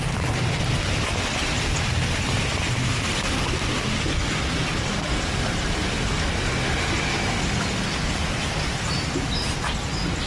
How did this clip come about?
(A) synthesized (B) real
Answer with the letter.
B